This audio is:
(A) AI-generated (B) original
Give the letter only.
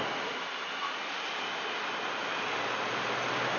B